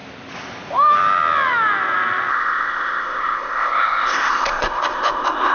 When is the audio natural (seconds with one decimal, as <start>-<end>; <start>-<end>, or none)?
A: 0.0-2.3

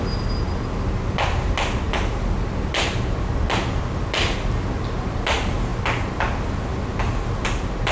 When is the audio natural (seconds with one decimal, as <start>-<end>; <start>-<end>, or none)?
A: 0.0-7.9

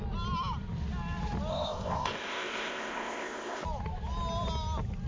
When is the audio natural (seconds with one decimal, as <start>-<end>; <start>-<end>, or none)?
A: 0.0-1.5; 3.6-5.1

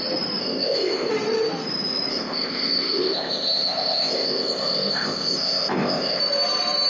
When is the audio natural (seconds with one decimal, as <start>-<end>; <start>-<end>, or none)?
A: 0.0-0.4; 1.1-2.1; 6.2-6.9

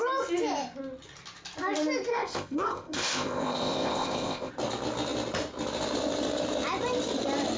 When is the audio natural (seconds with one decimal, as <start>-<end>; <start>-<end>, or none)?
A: 0.0-2.1; 4.5-7.6

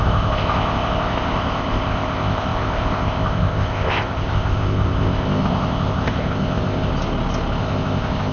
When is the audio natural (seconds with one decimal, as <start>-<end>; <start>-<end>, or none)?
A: 6.9-7.6

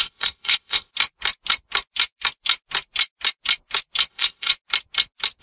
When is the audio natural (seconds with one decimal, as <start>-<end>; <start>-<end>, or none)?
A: 0.9-4.1; 4.5-5.4

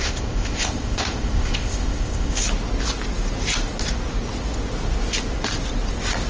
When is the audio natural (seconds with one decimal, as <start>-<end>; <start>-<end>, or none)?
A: 2.4-6.3